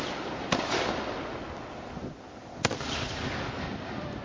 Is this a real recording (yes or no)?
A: yes